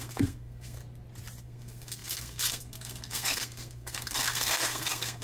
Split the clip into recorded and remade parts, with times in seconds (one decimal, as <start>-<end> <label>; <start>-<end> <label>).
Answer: 0.0-0.8 remade; 0.8-1.4 recorded; 1.4-5.2 remade